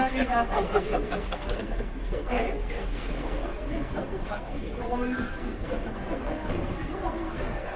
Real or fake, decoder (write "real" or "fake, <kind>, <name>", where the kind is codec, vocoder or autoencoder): fake, codec, SNAC